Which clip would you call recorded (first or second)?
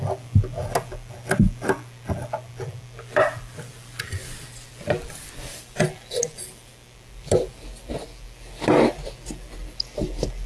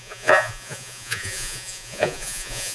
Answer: first